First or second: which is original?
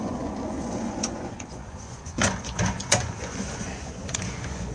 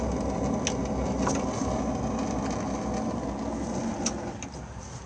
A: second